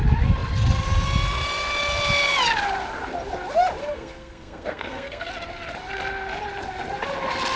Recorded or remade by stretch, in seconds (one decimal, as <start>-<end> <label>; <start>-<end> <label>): 0.0-3.8 recorded; 3.8-5.3 remade; 5.3-7.6 recorded